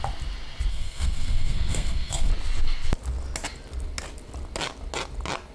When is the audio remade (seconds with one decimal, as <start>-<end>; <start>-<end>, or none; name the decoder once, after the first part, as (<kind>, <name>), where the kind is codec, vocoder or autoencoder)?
0.7-2.3 (codec, SNAC)